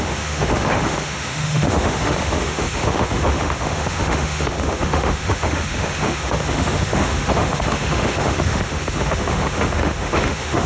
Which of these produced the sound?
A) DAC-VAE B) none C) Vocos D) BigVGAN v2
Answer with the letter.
A